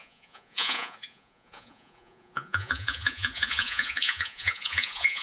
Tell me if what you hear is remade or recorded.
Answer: remade